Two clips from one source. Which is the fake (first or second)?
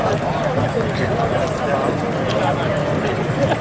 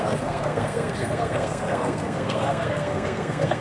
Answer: second